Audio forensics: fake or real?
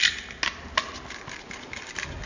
real